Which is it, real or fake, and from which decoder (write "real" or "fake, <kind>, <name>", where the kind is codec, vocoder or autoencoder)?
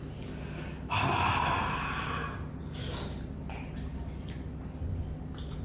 real